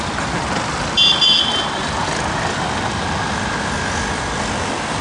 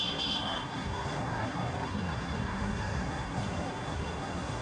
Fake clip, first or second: second